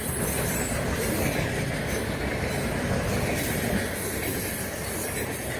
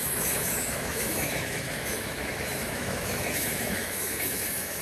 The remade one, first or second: second